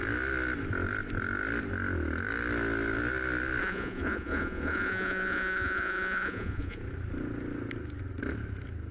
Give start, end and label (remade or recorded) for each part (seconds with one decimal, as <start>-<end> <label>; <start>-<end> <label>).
0.0-3.6 recorded; 3.6-6.8 remade; 6.8-8.9 recorded